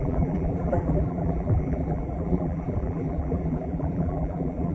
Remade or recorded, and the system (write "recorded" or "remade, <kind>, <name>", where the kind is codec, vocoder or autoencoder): remade, vocoder, BigVGAN v2